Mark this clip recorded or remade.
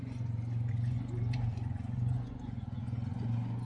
remade